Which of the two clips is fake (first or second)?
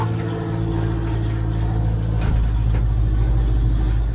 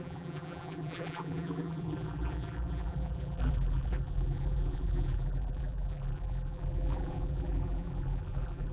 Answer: second